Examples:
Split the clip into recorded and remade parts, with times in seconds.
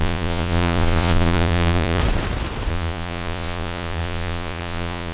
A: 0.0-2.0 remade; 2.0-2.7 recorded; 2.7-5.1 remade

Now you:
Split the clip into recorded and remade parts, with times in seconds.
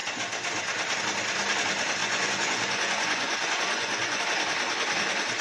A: 0.0-2.0 recorded; 2.0-4.2 remade; 4.2-5.4 recorded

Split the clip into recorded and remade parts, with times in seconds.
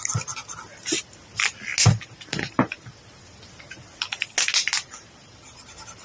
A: 0.0-6.0 recorded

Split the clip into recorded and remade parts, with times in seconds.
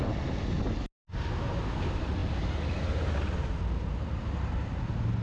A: 0.0-5.2 recorded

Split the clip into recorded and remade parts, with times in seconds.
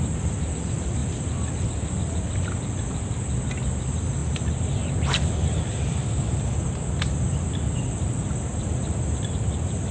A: 0.0-9.9 recorded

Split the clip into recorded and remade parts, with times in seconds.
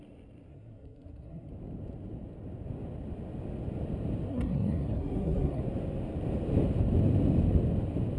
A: 0.0-0.5 recorded; 0.5-1.5 remade; 1.5-4.3 recorded; 4.3-5.6 remade; 5.6-8.2 recorded